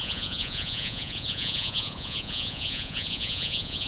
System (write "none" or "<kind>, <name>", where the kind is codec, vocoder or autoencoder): vocoder, Vocos